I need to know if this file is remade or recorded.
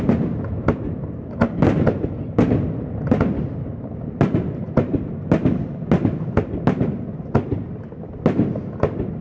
recorded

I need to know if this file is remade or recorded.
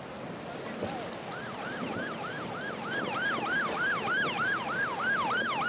recorded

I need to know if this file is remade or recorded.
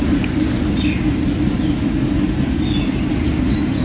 recorded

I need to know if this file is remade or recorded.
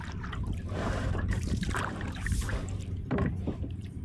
remade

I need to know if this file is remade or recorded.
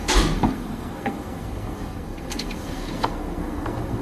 remade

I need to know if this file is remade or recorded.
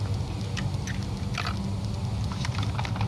recorded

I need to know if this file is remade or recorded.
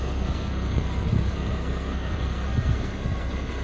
remade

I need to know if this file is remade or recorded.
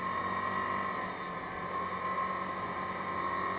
recorded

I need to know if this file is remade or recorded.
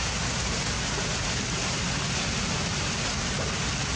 recorded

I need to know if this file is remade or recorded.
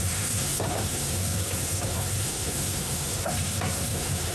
remade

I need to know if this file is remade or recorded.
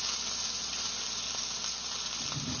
recorded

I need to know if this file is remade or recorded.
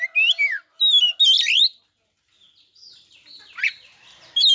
recorded